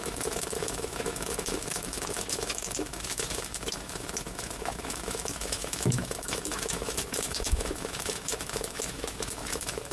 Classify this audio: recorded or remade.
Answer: remade